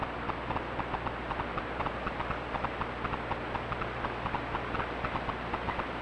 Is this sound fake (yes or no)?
no